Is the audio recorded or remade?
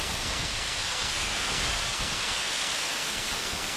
remade